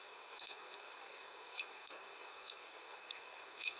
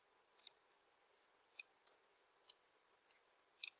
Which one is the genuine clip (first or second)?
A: second